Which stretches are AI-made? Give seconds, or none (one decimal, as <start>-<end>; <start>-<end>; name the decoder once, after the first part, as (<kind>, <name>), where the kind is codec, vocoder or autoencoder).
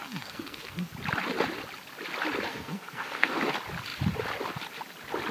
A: 0.0-0.9 (codec, SNAC); 2.5-3.4